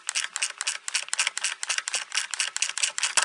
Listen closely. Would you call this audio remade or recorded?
recorded